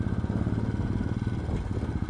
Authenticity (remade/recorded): recorded